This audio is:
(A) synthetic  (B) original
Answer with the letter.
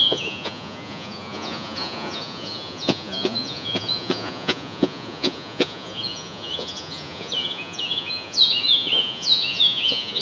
A